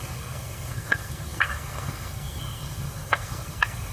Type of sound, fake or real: fake